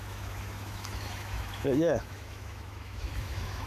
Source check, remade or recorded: remade